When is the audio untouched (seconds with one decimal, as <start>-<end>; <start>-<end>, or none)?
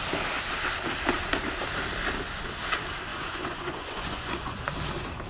0.0-3.1; 4.6-5.3